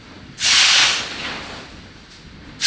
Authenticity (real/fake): real